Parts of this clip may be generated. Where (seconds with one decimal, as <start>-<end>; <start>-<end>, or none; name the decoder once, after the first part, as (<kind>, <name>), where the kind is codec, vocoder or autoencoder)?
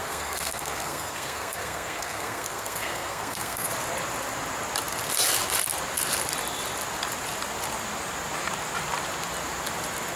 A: 0.0-3.7 (codec, SNAC)